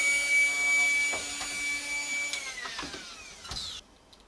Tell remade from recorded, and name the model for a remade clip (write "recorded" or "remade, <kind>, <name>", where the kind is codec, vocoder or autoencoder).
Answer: recorded